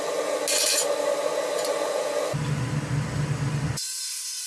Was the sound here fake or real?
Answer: real